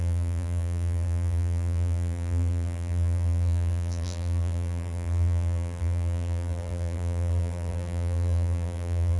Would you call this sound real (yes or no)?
no